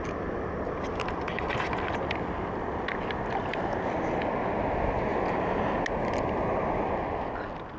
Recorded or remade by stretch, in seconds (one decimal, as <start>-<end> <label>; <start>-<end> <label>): 0.0-7.8 recorded